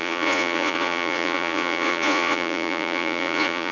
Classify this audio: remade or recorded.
remade